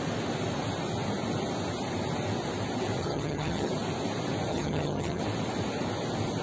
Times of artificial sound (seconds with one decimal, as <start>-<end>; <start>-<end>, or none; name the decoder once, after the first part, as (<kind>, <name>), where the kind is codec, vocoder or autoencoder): 3.0-3.7 (vocoder, HiFi-GAN); 4.5-5.2